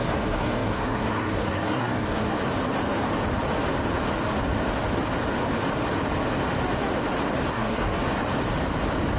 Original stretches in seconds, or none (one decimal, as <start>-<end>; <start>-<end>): 2.4-7.5; 8.0-9.2